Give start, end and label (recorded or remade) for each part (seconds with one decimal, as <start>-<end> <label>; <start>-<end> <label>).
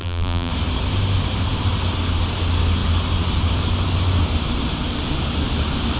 0.0-0.5 remade; 0.5-6.0 recorded